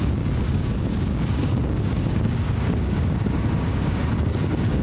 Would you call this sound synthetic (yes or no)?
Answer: yes